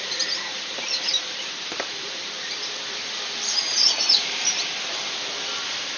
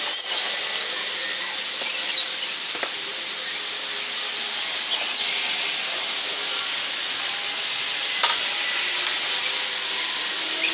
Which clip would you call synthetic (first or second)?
first